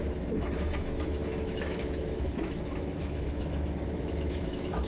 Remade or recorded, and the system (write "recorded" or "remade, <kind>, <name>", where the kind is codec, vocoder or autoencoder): remade, autoencoder, DAC-VAE